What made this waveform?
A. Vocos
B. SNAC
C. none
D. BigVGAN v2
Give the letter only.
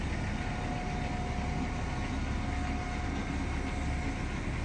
C